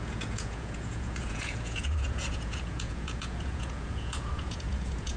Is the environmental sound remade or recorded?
remade